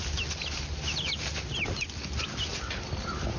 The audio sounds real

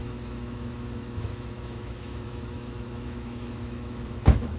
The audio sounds fake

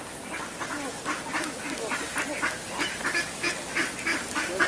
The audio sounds real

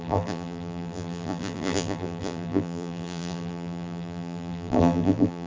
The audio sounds fake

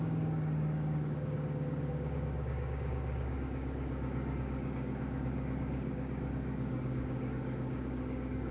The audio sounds fake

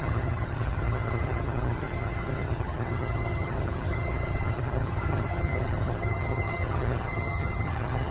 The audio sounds fake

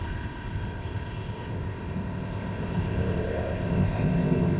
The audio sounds fake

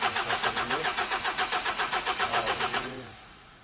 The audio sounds fake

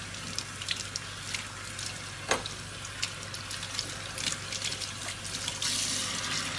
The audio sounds real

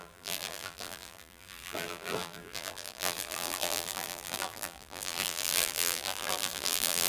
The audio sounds fake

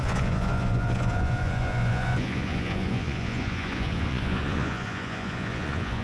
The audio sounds fake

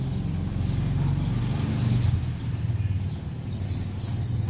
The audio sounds real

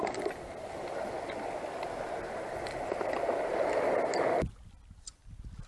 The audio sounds real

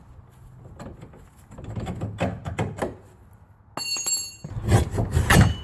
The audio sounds real